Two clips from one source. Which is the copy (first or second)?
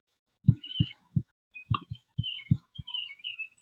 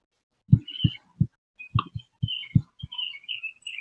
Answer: first